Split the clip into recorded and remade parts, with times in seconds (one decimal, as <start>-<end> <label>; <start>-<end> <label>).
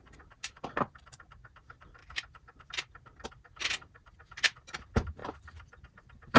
0.0-2.0 recorded; 2.0-2.7 remade; 2.7-5.2 recorded; 5.2-6.4 remade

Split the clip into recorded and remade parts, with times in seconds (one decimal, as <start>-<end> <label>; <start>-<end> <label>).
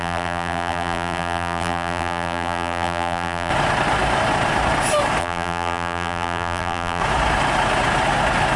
0.0-3.5 remade; 3.5-5.2 recorded; 5.2-7.0 remade; 7.0-8.6 recorded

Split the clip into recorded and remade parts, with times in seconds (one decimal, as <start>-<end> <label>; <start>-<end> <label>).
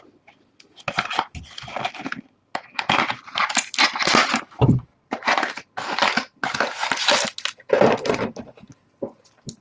0.0-9.6 recorded